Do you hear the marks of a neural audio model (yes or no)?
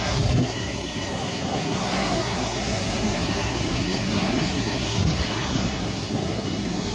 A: yes